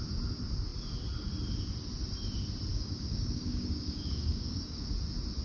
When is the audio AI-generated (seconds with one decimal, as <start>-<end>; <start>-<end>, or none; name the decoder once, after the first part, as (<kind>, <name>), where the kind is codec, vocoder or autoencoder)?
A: 2.7-4.9 (codec, DAC)